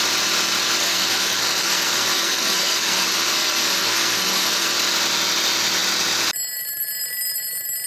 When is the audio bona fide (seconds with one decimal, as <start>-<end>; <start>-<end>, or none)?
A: 0.0-0.8; 4.7-7.9